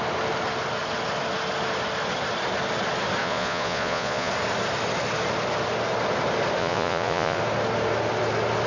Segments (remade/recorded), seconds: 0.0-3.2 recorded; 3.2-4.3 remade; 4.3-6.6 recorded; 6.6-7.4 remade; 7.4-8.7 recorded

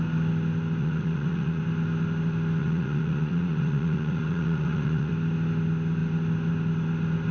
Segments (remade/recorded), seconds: 0.0-0.8 recorded; 0.8-1.6 remade; 1.6-2.6 recorded; 2.6-5.1 remade; 5.1-7.3 recorded

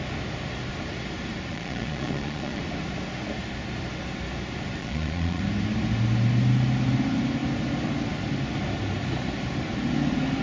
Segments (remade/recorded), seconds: 0.0-1.5 recorded; 1.5-2.6 remade; 2.6-4.8 recorded; 4.8-5.4 remade; 5.4-10.4 recorded

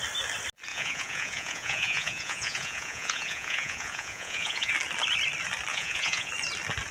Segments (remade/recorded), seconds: 0.0-0.7 recorded; 0.7-4.7 remade; 4.7-5.7 recorded; 5.7-6.3 remade; 6.3-6.9 recorded